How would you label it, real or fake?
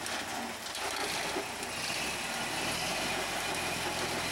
real